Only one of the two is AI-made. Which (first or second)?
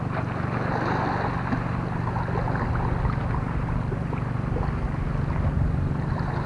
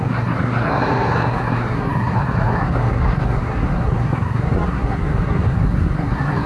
second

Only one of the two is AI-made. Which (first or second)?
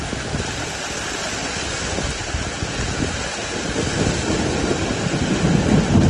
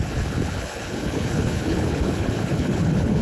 second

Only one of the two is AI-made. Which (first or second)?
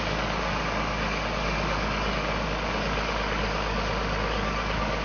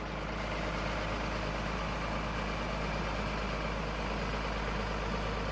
first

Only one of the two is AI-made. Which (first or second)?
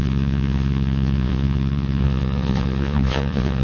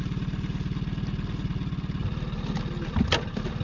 first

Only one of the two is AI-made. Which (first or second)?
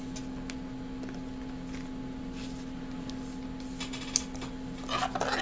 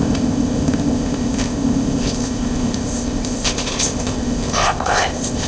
second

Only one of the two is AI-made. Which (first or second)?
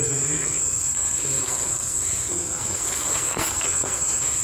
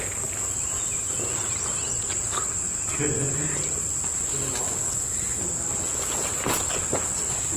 first